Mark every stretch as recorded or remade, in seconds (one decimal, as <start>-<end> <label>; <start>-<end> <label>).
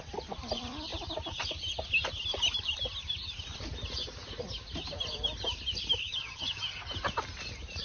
0.0-6.0 recorded; 6.0-6.8 remade; 6.8-7.8 recorded